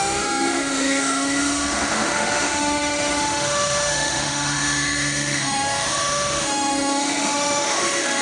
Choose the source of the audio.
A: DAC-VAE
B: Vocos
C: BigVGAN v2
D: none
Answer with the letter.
A